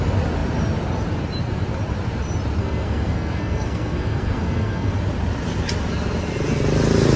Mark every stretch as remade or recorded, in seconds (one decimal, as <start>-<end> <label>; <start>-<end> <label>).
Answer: 0.0-2.6 recorded; 2.6-4.9 remade; 4.9-7.2 recorded